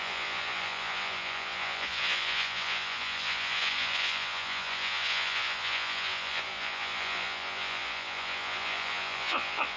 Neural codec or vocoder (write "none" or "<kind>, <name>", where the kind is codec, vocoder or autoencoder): vocoder, Vocos